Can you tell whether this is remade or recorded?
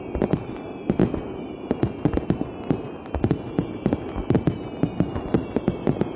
recorded